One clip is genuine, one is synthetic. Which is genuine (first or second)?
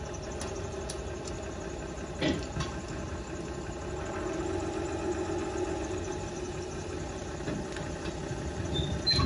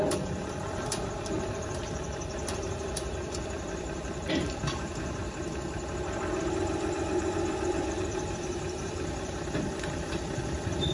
first